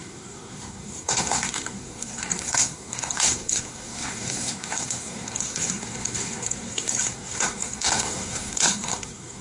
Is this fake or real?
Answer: fake